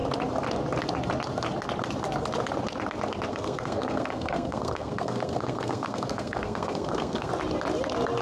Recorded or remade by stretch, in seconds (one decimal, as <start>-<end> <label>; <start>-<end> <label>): 0.0-3.3 recorded; 3.3-7.3 remade; 7.3-8.2 recorded